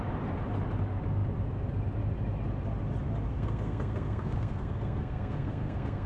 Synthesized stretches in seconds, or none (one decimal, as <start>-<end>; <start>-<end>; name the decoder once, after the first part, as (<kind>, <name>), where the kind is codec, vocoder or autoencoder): 3.3-6.1 (codec, SNAC)